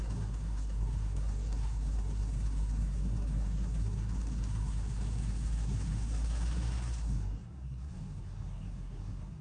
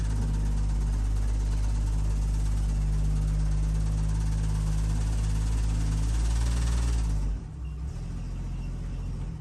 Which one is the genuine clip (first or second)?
second